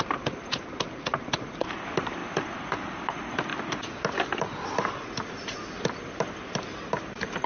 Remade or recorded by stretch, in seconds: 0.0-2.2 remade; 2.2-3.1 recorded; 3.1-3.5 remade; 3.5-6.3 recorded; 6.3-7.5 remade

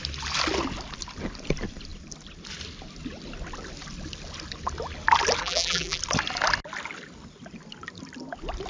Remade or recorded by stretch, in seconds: 0.0-5.4 recorded; 5.4-6.0 remade; 6.0-8.7 recorded

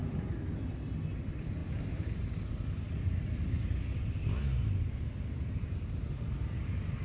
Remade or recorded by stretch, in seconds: 0.0-7.0 recorded

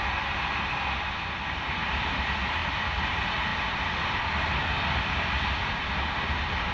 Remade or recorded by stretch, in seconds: 0.0-2.6 recorded; 2.6-3.1 remade; 3.1-3.5 recorded; 3.5-5.7 remade; 5.7-6.7 recorded

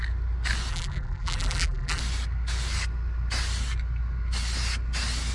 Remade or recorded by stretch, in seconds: 0.0-0.7 recorded; 0.7-2.0 remade; 2.0-5.3 recorded

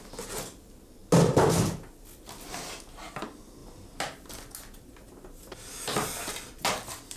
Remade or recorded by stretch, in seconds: 0.0-7.2 recorded

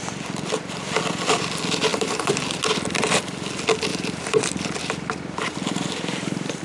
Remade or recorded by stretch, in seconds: 0.0-1.9 recorded; 1.9-2.6 remade; 2.6-3.9 recorded; 3.9-4.5 remade; 4.5-6.6 recorded

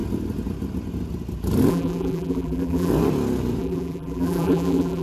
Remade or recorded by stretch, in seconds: 0.0-1.7 recorded; 1.7-2.9 remade; 2.9-3.6 recorded; 3.6-5.0 remade